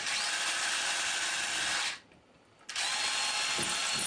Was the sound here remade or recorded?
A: recorded